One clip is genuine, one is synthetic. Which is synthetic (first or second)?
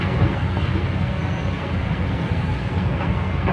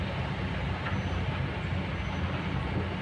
first